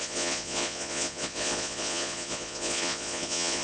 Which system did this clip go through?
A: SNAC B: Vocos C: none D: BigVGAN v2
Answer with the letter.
B